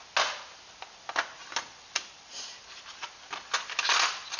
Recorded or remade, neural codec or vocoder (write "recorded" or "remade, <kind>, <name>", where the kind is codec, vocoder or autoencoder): recorded